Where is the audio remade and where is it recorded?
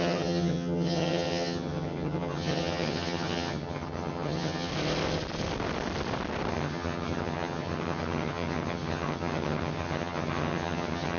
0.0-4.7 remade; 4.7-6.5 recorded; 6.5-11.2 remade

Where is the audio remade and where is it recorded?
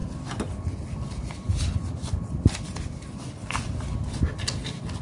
0.0-5.0 recorded